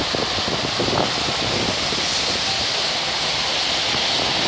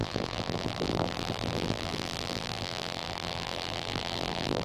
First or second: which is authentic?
first